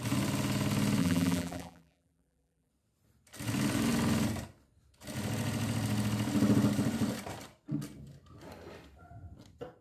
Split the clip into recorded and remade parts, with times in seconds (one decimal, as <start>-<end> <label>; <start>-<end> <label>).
0.0-1.0 recorded; 1.0-2.7 remade; 2.7-9.8 recorded